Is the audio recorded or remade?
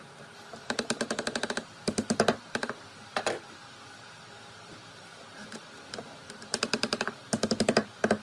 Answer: remade